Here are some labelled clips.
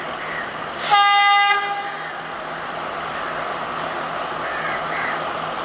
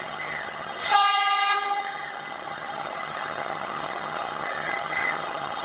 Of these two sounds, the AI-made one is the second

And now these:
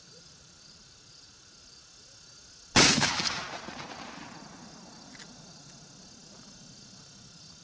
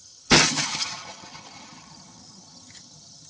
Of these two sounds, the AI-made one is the second